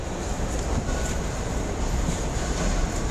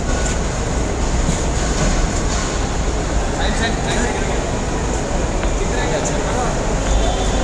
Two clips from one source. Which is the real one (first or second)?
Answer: second